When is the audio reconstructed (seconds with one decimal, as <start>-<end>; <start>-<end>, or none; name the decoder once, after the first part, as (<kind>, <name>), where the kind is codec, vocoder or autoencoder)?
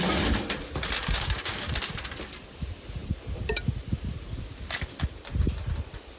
1.0-1.7 (codec, DAC)